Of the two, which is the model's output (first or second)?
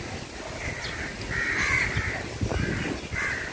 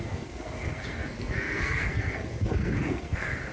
second